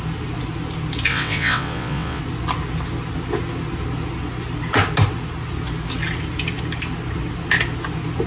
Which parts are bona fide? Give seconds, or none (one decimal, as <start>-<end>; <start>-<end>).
0.0-1.1; 2.2-8.3

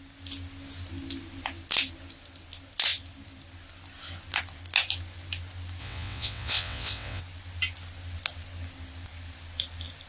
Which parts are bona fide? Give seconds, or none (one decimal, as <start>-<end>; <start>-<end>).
0.0-5.8; 7.2-10.1

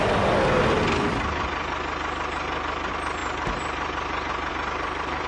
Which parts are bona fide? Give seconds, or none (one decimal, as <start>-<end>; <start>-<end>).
0.0-5.3